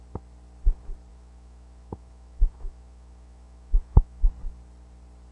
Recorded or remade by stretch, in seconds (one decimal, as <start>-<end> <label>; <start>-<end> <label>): 0.0-1.1 recorded; 1.1-4.3 remade; 4.3-5.3 recorded

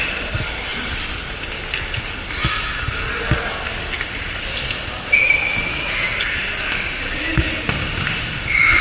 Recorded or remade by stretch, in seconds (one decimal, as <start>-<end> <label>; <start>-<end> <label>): 0.0-5.2 recorded; 5.2-6.0 remade; 6.0-8.8 recorded

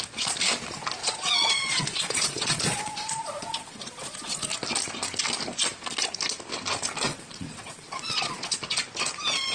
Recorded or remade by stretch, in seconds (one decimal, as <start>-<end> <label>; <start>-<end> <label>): 0.0-1.0 recorded; 1.0-4.5 remade; 4.5-7.1 recorded; 7.1-8.5 remade; 8.5-9.5 recorded

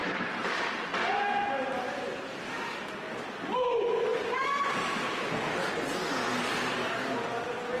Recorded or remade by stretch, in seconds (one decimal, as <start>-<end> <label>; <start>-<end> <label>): 0.0-0.7 remade; 0.7-4.1 recorded; 4.1-5.2 remade; 5.2-7.8 recorded